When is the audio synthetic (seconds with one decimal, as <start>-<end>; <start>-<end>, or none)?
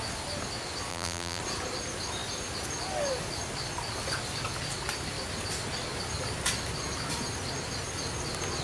0.9-1.4